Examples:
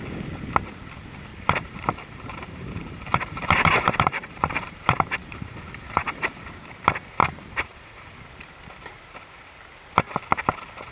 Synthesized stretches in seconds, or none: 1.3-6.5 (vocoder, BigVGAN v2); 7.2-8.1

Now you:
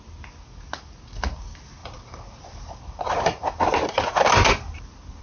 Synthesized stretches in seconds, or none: 1.8-5.2 (vocoder, BigVGAN v2)